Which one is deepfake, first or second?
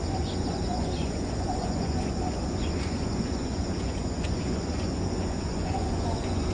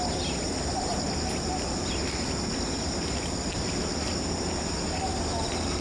first